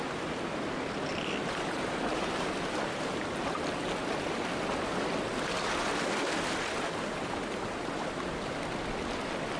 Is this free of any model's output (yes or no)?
yes